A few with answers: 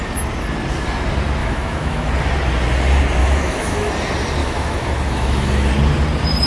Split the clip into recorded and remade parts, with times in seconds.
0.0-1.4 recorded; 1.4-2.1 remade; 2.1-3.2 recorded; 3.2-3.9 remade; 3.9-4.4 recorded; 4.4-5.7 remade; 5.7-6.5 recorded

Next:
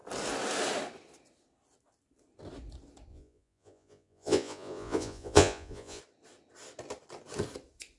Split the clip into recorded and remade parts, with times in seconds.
0.0-3.1 recorded; 3.1-6.0 remade; 6.0-8.0 recorded

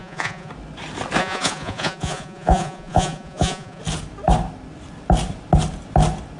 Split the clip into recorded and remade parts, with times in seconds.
0.0-0.5 remade; 0.5-1.2 recorded; 1.2-3.8 remade; 3.8-6.4 recorded